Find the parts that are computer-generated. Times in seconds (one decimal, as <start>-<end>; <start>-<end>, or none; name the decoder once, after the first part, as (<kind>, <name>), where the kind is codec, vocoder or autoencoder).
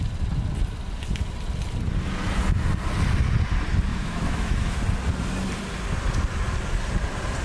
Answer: 3.9-4.8 (autoencoder, DAC-VAE)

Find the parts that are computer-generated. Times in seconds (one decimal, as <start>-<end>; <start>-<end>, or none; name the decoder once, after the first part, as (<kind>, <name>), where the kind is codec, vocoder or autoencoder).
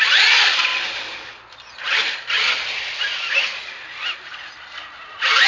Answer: none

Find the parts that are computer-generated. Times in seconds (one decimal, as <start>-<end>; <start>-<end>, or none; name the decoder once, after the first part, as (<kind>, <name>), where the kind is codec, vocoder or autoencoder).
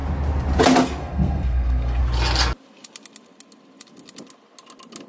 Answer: 1.0-2.0 (codec, SNAC)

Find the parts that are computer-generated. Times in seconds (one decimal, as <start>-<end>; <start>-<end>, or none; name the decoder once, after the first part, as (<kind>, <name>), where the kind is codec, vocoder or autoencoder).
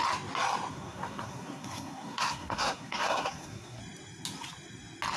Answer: 0.7-3.8 (codec, SNAC)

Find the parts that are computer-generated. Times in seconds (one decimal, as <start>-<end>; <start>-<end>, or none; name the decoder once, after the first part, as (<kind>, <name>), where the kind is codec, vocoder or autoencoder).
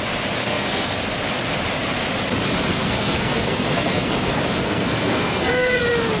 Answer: 0.4-1.0 (codec, SNAC); 2.7-5.8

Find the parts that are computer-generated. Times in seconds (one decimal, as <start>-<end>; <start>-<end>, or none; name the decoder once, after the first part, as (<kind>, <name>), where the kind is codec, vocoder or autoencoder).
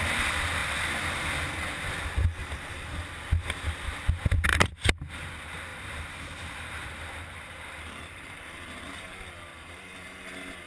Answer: 0.6-1.3 (vocoder, BigVGAN v2); 2.4-3.0; 4.5-5.1; 5.7-10.2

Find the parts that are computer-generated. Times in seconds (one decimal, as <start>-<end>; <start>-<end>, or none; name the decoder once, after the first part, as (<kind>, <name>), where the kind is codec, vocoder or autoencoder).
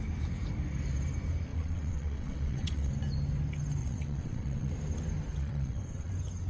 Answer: 1.5-2.9 (vocoder, WaveNeXt); 3.8-4.7; 5.3-6.1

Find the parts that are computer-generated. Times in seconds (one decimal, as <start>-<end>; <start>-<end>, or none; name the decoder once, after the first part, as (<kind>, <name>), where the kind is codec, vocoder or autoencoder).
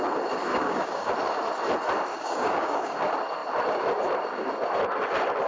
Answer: 0.5-1.1 (codec, DAC); 2.1-3.0